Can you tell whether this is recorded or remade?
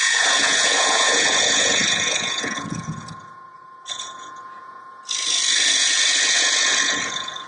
remade